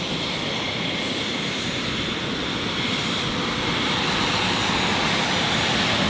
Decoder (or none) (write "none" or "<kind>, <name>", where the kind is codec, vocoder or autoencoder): none